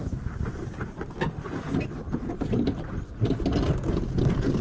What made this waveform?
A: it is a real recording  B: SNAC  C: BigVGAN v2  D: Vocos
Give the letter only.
A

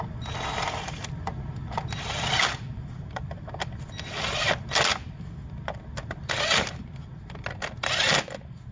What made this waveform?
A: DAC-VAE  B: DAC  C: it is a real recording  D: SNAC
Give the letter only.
C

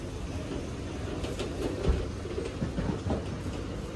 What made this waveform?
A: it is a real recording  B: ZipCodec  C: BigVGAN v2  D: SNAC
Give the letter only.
A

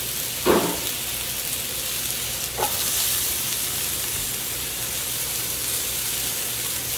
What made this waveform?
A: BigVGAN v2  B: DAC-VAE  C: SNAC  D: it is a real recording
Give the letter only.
D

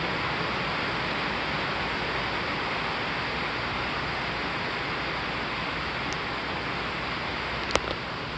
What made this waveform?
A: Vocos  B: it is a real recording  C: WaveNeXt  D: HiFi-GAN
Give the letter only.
B